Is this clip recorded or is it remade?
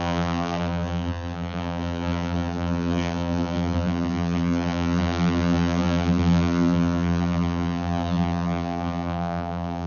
remade